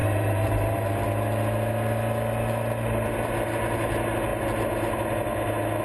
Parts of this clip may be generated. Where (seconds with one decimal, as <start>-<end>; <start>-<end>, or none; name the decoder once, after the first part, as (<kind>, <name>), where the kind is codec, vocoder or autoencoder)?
0.0-1.1 (vocoder, BigVGAN v2)